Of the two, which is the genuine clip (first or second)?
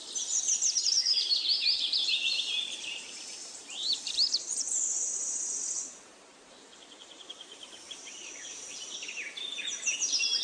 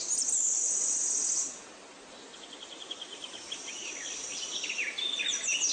second